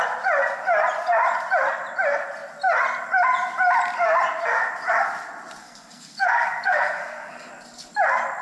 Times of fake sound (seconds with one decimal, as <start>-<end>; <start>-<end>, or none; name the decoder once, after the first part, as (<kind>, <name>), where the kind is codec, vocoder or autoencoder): 5.6-7.5 (codec, SNAC)